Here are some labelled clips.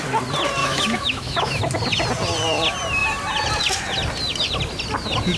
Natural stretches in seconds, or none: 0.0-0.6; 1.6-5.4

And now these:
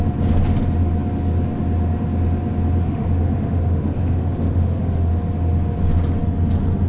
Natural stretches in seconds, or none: 0.0-2.8; 5.1-6.9

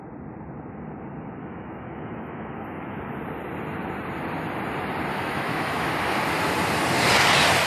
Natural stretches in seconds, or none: 0.0-1.4; 3.0-5.1; 5.9-7.7

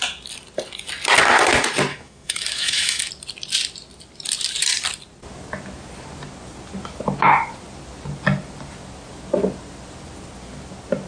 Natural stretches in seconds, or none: 0.0-1.9; 3.1-11.1